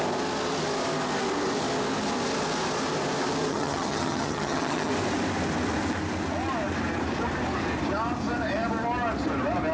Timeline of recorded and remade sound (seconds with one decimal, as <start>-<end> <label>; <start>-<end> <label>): 0.0-3.5 recorded; 3.5-4.9 remade; 4.9-9.7 recorded